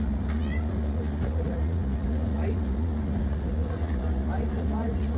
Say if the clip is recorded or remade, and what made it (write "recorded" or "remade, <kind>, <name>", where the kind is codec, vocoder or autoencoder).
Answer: remade, vocoder, Vocos